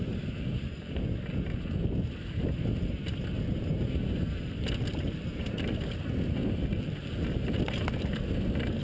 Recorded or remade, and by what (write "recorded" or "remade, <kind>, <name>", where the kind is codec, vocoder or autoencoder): recorded